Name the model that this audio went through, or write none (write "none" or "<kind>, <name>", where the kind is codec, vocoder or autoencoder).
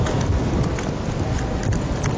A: none